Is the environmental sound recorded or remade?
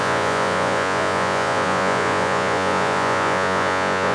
remade